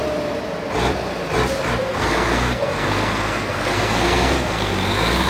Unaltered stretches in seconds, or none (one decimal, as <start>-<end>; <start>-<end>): 0.0-1.8